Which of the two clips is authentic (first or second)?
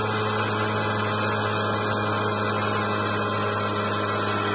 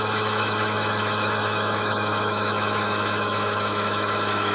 first